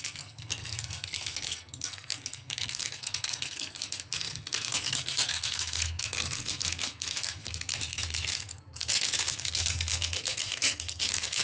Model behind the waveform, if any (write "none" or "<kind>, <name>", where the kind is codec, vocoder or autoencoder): codec, SNAC